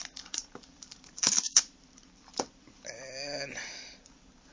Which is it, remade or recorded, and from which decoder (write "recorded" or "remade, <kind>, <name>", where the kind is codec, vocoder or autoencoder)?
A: remade, vocoder, BigVGAN v2